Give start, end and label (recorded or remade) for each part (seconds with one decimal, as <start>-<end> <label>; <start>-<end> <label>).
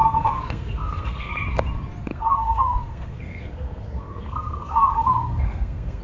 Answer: 0.0-1.3 remade; 1.3-2.1 recorded; 2.1-6.0 remade